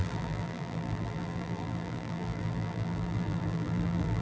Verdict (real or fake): fake